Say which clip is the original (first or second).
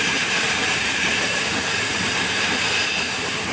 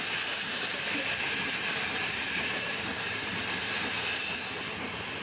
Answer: second